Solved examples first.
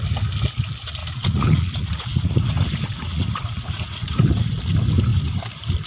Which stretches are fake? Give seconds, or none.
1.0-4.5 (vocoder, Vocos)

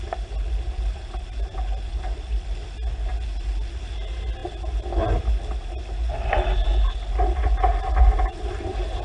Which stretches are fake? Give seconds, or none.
none

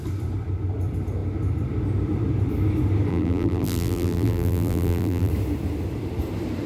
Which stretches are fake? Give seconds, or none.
3.1-5.3 (vocoder, BigVGAN v2)

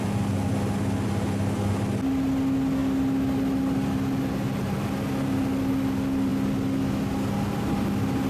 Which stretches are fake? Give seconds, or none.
none

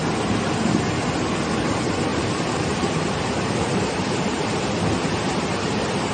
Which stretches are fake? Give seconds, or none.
2.1-4.8 (vocoder, BigVGAN v2)

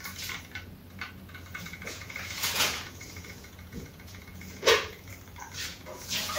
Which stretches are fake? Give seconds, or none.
1.5-5.1 (vocoder, Vocos); 5.7-6.4

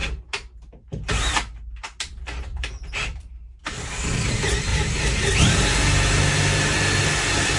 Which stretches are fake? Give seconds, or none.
0.0-1.3 (vocoder, BigVGAN v2); 2.5-4.3; 4.7-7.0

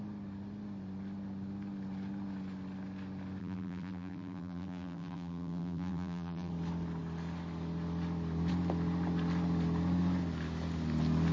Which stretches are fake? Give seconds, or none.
3.4-6.5 (vocoder, BigVGAN v2)